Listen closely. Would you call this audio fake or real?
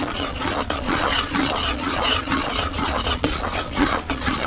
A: fake